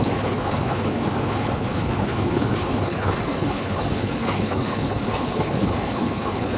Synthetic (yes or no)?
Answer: yes